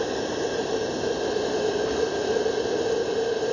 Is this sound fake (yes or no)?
no